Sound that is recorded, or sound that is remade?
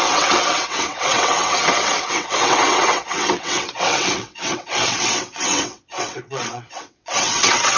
remade